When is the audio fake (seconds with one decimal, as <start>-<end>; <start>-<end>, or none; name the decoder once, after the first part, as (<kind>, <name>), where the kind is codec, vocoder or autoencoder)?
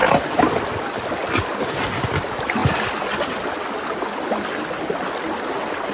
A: none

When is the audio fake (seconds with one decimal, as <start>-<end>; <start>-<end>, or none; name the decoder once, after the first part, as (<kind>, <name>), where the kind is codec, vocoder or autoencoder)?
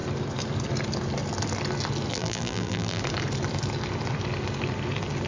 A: 2.1-3.0 (vocoder, BigVGAN v2)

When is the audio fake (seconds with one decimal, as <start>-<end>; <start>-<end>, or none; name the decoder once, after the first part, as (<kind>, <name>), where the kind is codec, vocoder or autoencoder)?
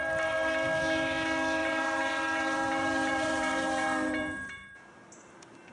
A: 1.6-4.8 (vocoder, BigVGAN v2)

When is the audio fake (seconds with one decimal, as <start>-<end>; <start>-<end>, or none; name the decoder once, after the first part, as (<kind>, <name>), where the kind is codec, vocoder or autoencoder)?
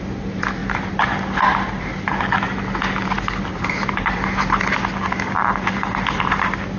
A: 0.6-1.1 (vocoder, BigVGAN v2); 3.5-4.6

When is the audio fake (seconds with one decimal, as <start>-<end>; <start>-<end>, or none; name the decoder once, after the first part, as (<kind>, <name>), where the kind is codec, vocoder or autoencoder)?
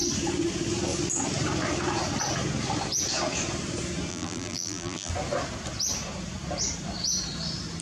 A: 4.1-5.1 (vocoder, BigVGAN v2)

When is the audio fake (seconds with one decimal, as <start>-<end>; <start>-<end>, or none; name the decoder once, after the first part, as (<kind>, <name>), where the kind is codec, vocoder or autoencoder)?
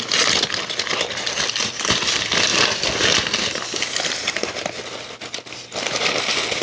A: none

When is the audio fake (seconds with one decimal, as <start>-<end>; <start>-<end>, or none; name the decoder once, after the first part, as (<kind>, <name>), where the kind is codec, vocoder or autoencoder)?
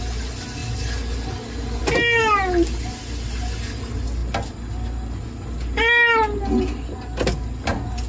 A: none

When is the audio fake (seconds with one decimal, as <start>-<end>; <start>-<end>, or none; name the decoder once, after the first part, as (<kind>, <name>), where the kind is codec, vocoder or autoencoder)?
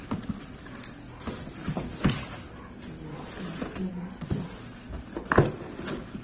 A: none